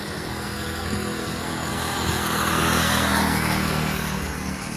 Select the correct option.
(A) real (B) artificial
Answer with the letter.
B